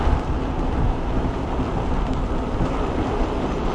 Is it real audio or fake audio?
real